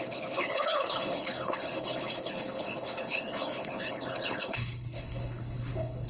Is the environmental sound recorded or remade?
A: remade